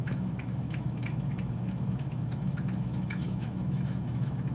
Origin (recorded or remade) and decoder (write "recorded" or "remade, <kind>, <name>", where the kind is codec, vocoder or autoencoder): remade, autoencoder, DAC-VAE